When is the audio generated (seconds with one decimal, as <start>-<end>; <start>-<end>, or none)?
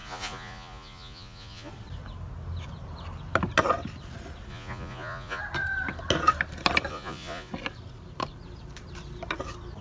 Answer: 0.0-1.7; 4.5-5.4; 6.9-7.5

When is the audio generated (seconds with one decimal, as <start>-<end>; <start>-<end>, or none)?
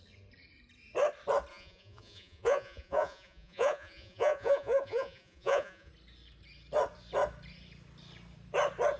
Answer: 1.5-5.9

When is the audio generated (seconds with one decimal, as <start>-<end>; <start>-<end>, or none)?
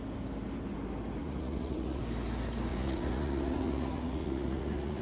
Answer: 1.2-2.0; 2.7-5.0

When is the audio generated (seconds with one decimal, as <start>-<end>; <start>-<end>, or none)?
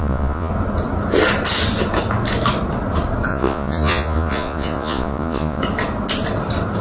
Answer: 0.0-0.5; 3.3-5.6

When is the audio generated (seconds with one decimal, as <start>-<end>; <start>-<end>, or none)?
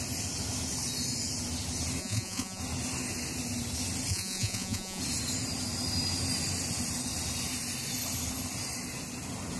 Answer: 2.0-2.6; 4.1-5.0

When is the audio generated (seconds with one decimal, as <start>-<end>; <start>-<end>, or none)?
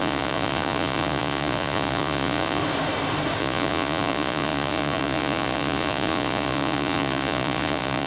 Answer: 0.0-2.6; 3.4-8.1